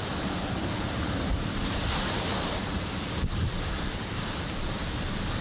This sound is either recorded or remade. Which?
remade